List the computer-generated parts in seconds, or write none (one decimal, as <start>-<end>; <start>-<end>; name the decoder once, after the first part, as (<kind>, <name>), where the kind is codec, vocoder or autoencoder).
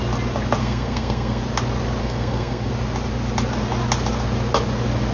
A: 0.6-1.4 (codec, SNAC); 2.0-2.7